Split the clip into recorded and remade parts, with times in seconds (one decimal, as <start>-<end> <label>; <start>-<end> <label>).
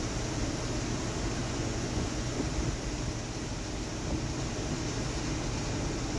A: 0.0-1.4 recorded; 1.4-2.4 remade; 2.4-6.2 recorded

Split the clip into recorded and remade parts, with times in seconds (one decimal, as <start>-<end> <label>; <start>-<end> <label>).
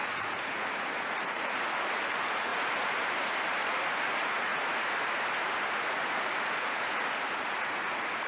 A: 0.0-4.5 remade; 4.5-5.7 recorded; 5.7-8.3 remade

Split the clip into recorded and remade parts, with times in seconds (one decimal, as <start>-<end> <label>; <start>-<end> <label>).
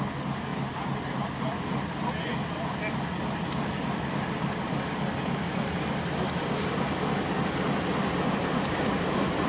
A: 0.0-9.5 recorded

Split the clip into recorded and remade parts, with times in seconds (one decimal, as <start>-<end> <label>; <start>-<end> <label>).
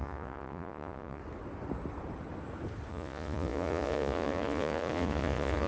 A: 0.0-1.2 remade; 1.2-2.9 recorded; 2.9-5.7 remade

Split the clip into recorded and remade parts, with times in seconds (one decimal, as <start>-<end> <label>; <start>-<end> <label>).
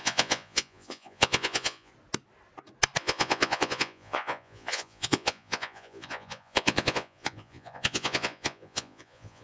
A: 0.0-1.9 remade; 1.9-3.0 recorded; 3.0-9.4 remade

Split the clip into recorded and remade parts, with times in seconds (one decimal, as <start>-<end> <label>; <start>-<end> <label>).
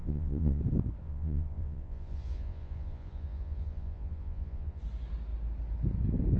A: 0.0-0.6 remade; 0.6-1.0 recorded; 1.0-4.8 remade; 4.8-6.4 recorded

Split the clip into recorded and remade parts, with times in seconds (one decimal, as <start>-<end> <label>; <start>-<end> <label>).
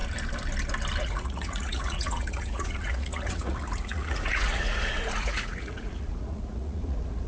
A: 0.0-1.0 recorded; 1.0-7.3 remade